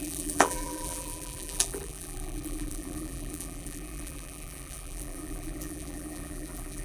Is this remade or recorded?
remade